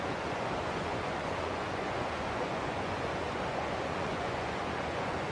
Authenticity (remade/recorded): remade